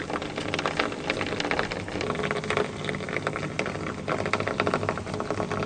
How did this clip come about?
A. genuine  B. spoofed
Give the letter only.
A